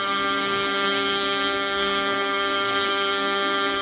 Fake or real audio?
fake